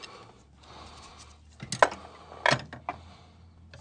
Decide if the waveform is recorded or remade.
recorded